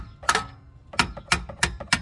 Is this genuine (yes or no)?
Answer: yes